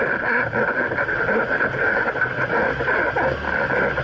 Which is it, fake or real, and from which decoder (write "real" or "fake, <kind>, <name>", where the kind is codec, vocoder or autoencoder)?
real